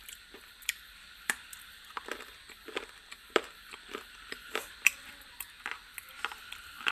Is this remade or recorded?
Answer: remade